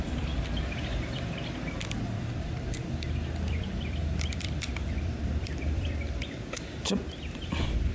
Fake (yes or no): yes